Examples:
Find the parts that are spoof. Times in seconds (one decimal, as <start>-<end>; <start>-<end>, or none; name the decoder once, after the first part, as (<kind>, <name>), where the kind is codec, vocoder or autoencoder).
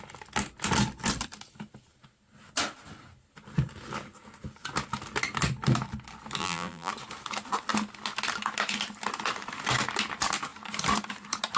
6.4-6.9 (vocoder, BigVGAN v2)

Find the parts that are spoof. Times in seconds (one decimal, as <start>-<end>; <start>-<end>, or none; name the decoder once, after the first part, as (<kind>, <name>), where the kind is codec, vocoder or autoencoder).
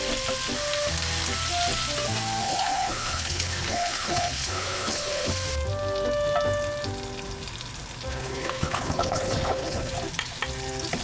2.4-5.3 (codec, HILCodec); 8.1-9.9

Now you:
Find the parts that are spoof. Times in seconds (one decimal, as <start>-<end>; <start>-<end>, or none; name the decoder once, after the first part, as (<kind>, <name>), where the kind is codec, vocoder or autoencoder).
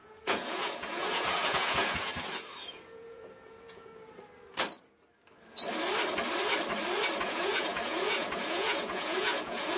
0.0-2.1 (vocoder, Vocos); 2.7-3.9; 7.2-9.8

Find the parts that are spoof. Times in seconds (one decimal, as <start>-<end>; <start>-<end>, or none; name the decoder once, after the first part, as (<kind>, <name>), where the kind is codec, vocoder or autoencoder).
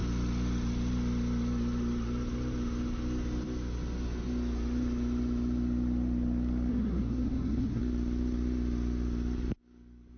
6.7-7.8 (codec, SNAC)